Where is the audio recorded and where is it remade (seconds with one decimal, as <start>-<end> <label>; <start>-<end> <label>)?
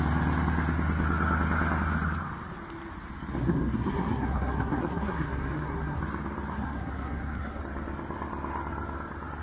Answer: 0.0-3.4 recorded; 3.4-6.0 remade; 6.0-6.5 recorded; 6.5-7.6 remade; 7.6-9.4 recorded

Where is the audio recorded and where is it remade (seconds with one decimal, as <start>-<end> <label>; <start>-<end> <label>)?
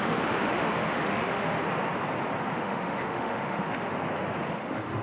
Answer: 0.0-1.6 remade; 1.6-2.5 recorded; 2.5-3.9 remade; 3.9-4.5 recorded; 4.5-5.0 remade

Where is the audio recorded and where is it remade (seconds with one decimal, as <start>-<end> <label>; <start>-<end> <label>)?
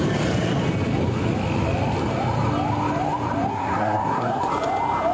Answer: 0.0-3.5 recorded; 3.5-4.5 remade; 4.5-5.1 recorded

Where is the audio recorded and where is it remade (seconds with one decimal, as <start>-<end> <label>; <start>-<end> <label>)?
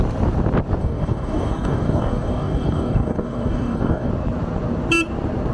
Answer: 0.0-0.8 recorded; 0.8-4.1 remade; 4.1-5.5 recorded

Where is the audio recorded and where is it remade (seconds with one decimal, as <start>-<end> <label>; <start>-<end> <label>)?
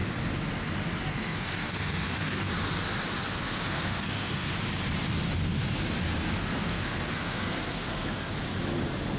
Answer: 0.0-1.1 recorded; 1.1-2.5 remade; 2.5-3.3 recorded; 3.3-4.5 remade; 4.5-6.4 recorded; 6.4-8.3 remade; 8.3-9.2 recorded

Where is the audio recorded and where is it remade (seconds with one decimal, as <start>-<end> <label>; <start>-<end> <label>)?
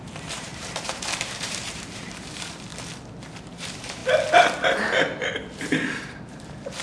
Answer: 0.0-2.7 remade; 2.7-3.4 recorded; 3.4-4.0 remade; 4.0-5.6 recorded; 5.6-6.8 remade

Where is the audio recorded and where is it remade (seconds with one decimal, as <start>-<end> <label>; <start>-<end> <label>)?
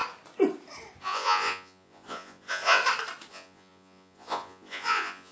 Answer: 0.0-1.0 recorded; 1.0-2.8 remade; 2.8-3.3 recorded; 3.3-5.3 remade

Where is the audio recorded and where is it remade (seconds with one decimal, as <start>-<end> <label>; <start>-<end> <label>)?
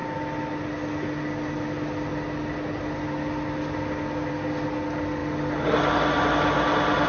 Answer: 0.0-7.1 recorded